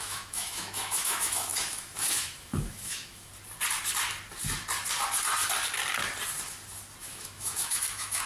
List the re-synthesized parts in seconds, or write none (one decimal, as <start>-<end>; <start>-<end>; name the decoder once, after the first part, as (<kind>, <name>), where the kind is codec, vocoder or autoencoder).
0.0-3.3 (autoencoder, DAC-VAE); 7.0-8.3